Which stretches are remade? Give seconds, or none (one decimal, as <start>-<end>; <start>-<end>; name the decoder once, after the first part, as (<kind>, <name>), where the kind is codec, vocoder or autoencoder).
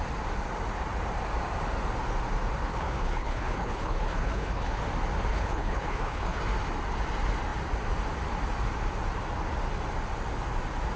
2.7-4.8 (codec, HILCodec); 5.3-6.4